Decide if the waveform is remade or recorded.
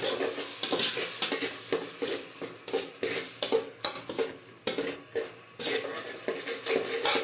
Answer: recorded